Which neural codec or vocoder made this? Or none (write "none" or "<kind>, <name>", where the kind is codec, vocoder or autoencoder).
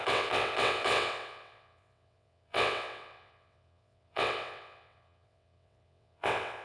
vocoder, WaveNeXt